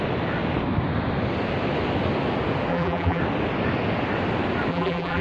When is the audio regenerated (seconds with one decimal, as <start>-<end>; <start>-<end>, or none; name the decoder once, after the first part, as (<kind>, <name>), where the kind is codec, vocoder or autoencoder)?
2.7-3.2 (vocoder, BigVGAN v2); 4.7-5.2